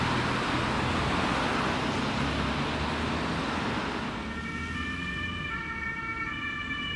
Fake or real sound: real